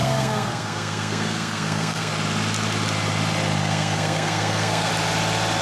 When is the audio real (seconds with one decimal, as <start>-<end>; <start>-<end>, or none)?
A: 2.1-3.6; 4.9-5.6